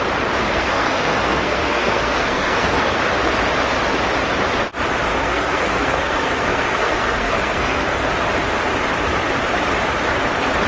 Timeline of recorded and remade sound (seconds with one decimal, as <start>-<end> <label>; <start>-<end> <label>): 0.0-0.4 recorded; 0.4-3.0 remade; 3.0-5.1 recorded; 5.1-8.1 remade; 8.1-10.7 recorded